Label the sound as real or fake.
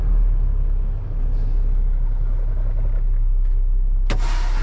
real